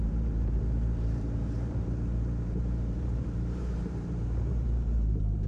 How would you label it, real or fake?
fake